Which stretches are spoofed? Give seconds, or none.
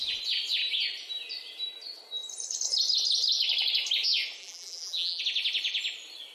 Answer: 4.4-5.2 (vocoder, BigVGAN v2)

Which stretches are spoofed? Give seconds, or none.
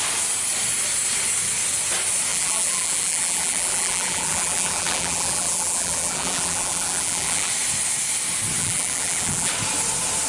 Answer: 2.3-7.5 (vocoder, BigVGAN v2); 8.6-9.5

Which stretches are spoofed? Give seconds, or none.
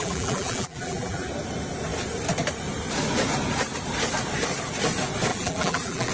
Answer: 0.0-1.3 (vocoder, BigVGAN v2); 5.3-6.1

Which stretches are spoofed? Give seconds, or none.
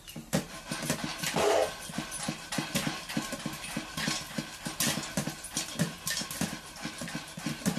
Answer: 1.1-3.3 (vocoder, BigVGAN v2)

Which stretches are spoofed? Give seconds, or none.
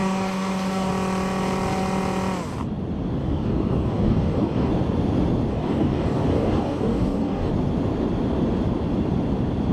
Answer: 0.0-0.9 (codec, DAC); 3.2-4.7; 5.5-7.5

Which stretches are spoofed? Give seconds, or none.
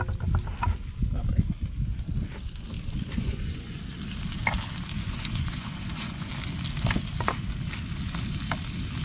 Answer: 3.2-3.8 (vocoder, Vocos); 5.0-6.3